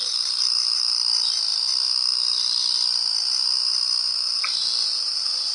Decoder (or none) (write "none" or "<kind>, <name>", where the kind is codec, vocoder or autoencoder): none